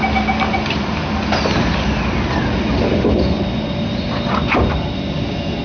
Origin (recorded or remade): recorded